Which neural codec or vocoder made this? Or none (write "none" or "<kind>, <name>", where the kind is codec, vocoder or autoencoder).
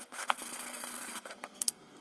codec, SNAC